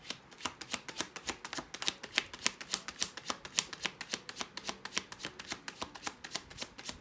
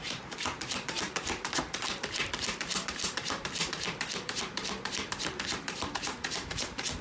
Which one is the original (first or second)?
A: first